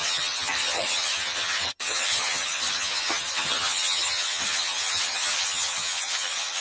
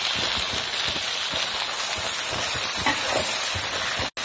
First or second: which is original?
second